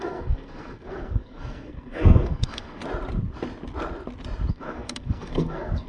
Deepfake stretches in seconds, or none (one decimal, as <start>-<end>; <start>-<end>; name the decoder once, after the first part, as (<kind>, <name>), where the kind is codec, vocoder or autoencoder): 0.0-2.8 (codec, SNAC); 4.5-5.9